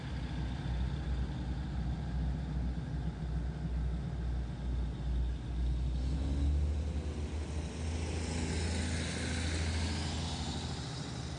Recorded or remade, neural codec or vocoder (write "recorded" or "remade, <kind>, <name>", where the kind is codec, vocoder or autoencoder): recorded